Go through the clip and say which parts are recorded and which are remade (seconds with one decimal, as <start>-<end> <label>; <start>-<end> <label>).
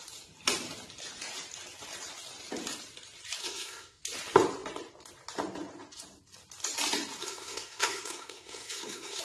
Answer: 0.0-3.4 recorded; 3.4-4.0 remade; 4.0-7.2 recorded; 7.2-9.2 remade